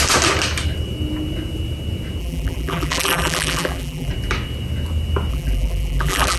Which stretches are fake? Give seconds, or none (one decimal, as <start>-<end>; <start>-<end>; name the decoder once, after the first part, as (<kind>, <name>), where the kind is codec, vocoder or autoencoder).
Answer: 2.2-4.1 (vocoder, BigVGAN v2); 5.3-6.4